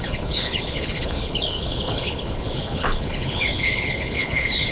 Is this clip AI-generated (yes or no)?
yes